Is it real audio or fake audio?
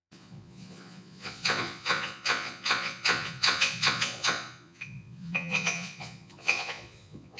fake